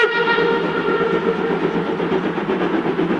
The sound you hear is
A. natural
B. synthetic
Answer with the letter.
A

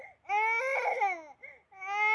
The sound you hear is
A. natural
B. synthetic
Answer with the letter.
A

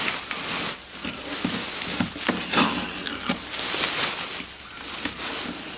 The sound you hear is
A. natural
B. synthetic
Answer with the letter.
A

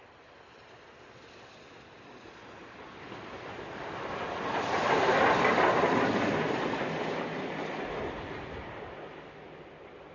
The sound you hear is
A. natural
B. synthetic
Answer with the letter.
A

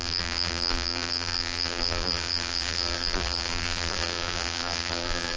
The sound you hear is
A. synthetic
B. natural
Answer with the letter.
A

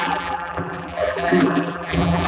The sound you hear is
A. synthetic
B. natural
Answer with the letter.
A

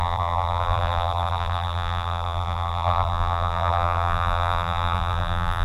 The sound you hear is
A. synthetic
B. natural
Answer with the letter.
A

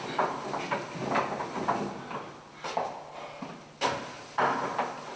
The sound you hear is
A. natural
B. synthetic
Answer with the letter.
A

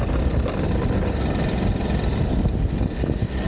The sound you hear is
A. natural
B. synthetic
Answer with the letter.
A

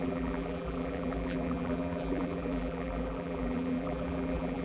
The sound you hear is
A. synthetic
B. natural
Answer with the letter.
A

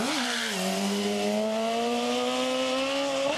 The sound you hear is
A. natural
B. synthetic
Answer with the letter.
A